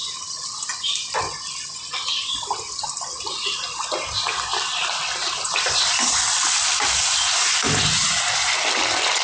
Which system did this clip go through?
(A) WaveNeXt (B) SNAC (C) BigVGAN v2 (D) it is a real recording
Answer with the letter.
D